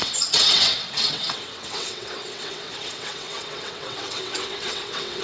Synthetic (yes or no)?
yes